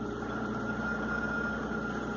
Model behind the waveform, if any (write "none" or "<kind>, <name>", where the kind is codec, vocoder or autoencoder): none